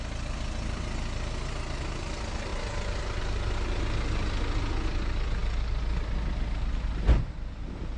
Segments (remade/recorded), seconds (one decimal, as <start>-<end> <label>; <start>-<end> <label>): 0.0-5.4 recorded; 5.4-7.2 remade; 7.2-8.0 recorded